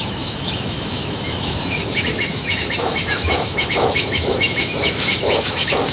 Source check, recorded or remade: remade